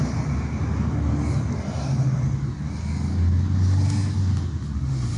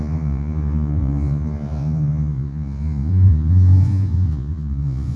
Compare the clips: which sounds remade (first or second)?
second